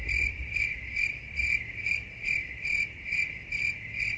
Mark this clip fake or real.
fake